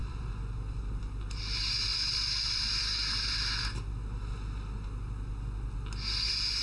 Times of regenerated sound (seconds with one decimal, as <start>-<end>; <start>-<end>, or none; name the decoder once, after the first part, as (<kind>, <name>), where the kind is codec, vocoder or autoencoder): 0.0-0.8 (vocoder, BigVGAN v2); 1.9-2.6